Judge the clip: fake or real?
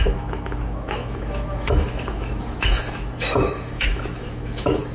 fake